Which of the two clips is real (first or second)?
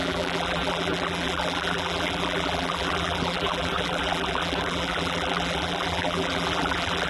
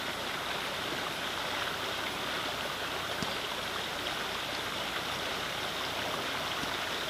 second